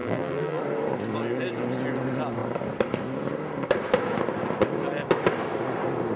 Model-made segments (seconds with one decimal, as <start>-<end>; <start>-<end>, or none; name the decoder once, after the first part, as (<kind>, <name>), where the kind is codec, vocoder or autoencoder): 0.0-0.6 (vocoder, BigVGAN v2)